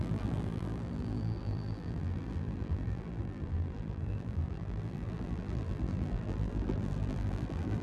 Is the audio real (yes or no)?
no